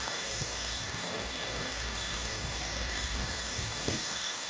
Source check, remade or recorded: remade